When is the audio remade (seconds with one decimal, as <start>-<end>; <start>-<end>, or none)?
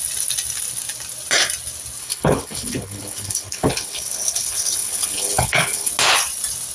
2.0-5.9